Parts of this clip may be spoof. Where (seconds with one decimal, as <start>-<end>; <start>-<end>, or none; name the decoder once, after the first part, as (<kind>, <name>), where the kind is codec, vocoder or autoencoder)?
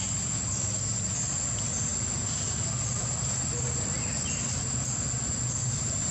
none